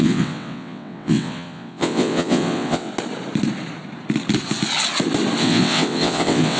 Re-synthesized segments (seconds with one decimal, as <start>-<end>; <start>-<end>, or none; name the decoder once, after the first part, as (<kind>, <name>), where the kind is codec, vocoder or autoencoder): 0.0-2.9 (vocoder, WaveNeXt); 5.4-6.6